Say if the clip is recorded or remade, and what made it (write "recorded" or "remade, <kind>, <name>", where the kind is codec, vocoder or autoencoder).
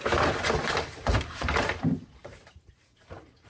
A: remade, vocoder, BigVGAN v2